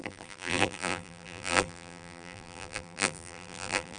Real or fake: fake